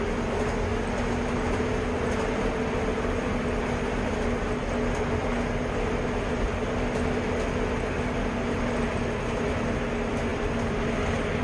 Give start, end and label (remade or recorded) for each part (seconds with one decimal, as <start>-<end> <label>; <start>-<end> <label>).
0.0-11.4 recorded